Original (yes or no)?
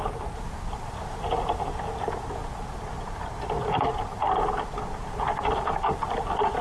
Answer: yes